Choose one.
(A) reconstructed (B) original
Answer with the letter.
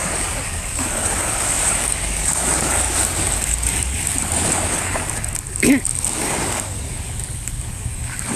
A